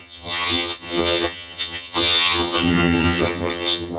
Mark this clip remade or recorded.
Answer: remade